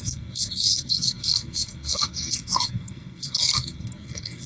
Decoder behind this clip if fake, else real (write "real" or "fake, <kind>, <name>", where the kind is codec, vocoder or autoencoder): fake, codec, SNAC